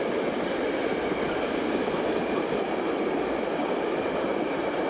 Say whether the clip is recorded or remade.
recorded